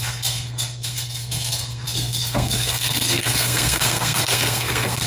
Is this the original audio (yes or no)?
no